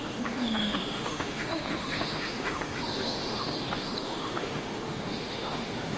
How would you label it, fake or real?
fake